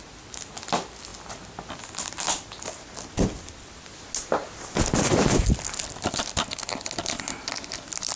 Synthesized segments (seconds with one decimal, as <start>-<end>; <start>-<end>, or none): none